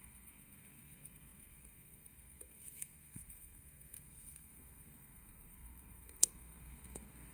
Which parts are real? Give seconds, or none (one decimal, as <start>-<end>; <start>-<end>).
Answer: none